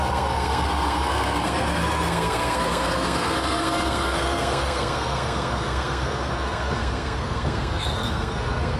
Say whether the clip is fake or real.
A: fake